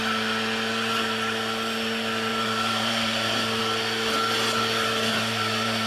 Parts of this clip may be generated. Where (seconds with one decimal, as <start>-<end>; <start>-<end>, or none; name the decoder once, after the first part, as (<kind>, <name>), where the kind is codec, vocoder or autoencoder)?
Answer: 2.3-3.6 (vocoder, BigVGAN v2); 5.1-5.9